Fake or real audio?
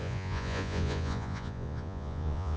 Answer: fake